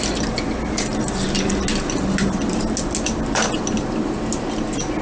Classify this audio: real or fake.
real